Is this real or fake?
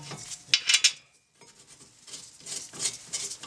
real